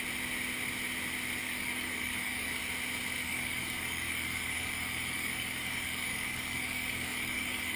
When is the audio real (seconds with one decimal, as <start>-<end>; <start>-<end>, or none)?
0.0-1.4; 2.6-3.2